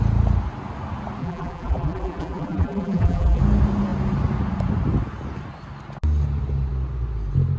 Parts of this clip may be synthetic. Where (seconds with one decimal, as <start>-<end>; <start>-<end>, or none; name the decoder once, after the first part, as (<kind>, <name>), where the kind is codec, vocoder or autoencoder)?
1.2-3.4 (vocoder, BigVGAN v2)